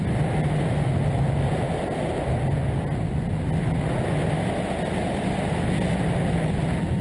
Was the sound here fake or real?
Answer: real